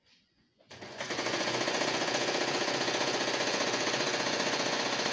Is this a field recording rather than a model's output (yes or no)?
no